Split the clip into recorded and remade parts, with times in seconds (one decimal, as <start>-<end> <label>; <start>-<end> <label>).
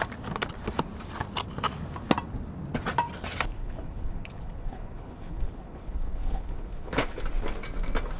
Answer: 0.0-3.6 recorded; 3.6-7.2 remade; 7.2-8.2 recorded